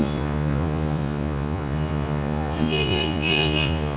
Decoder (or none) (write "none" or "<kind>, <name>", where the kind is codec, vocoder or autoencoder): vocoder, Vocos